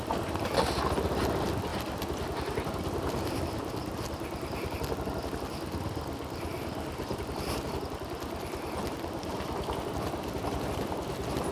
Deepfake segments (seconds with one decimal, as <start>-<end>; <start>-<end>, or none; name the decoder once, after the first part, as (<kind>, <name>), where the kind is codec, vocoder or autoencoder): 6.5-11.5 (vocoder, BigVGAN v2)